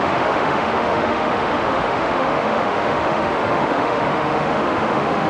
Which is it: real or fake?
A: fake